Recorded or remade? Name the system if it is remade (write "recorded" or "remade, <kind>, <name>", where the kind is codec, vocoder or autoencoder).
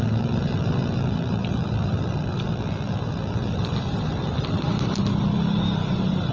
recorded